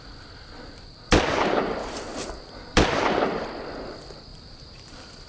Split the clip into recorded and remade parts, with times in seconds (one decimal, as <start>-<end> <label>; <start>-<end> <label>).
0.0-1.8 recorded; 1.8-2.7 remade; 2.7-4.3 recorded; 4.3-5.3 remade